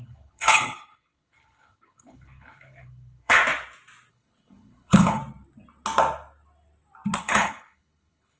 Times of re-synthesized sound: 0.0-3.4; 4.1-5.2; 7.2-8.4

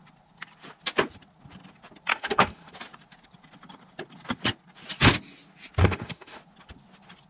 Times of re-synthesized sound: 2.1-2.7; 5.8-6.4

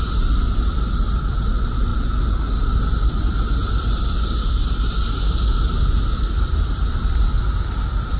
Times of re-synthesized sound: none

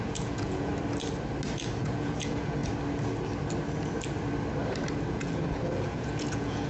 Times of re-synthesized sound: 0.0-0.7; 1.8-2.6; 5.1-6.7

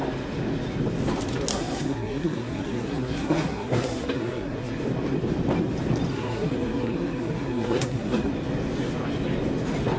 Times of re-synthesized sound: 1.5-4.8; 6.1-8.3

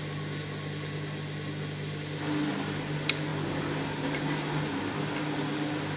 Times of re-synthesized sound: none